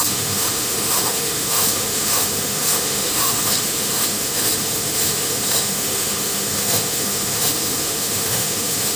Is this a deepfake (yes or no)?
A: yes